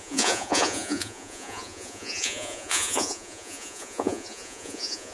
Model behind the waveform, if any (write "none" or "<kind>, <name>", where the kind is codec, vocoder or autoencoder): vocoder, Vocos